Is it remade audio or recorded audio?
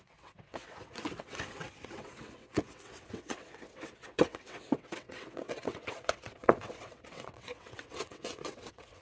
remade